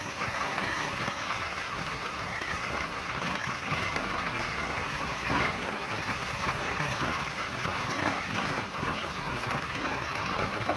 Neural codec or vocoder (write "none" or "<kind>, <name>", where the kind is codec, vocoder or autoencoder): codec, SNAC